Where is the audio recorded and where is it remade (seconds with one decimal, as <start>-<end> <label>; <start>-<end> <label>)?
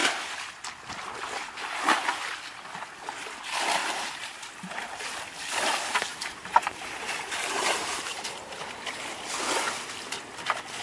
0.0-3.8 recorded; 3.8-4.5 remade; 4.5-6.1 recorded; 6.1-9.2 remade; 9.2-10.8 recorded